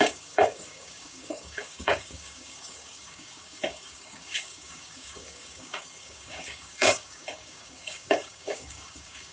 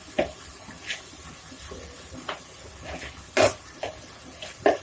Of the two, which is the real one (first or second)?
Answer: second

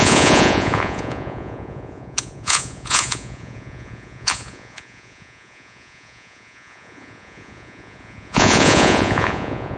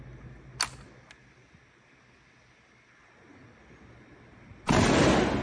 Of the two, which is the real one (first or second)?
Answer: second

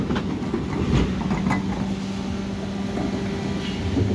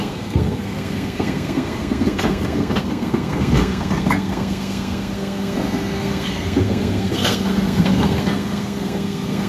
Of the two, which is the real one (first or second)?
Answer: first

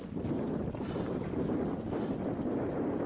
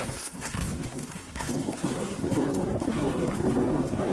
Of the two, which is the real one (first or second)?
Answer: first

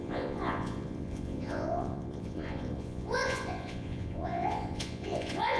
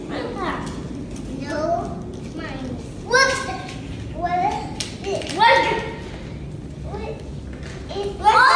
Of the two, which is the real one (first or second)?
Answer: second